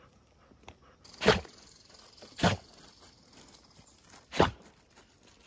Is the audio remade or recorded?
recorded